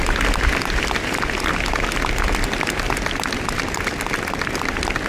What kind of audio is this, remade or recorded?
recorded